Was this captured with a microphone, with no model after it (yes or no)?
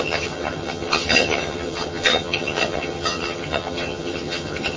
no